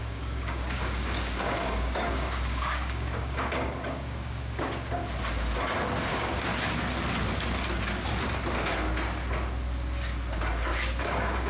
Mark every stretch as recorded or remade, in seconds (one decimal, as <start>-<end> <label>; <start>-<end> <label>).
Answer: 0.0-5.0 remade; 5.0-6.1 recorded; 6.1-6.5 remade; 6.5-11.0 recorded; 11.0-11.5 remade